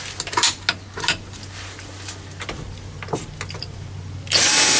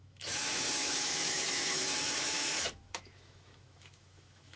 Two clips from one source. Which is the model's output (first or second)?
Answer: second